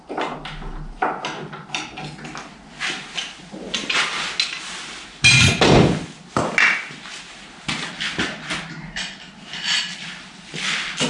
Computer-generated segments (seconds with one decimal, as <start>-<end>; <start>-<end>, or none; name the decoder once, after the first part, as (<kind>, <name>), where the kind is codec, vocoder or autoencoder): none